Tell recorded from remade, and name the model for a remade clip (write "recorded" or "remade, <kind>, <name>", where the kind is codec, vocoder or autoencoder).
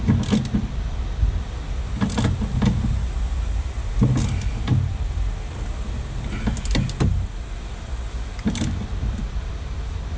recorded